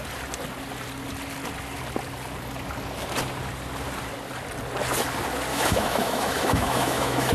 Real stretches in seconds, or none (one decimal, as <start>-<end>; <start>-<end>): 0.0-5.5